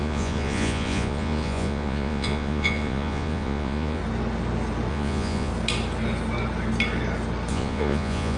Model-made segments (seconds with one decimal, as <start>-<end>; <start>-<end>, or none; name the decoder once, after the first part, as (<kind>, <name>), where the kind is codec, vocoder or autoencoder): 0.0-4.0 (vocoder, Vocos); 4.9-5.5; 7.5-8.4